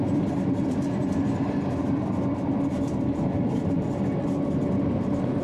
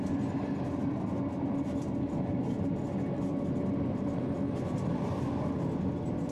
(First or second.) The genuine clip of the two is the second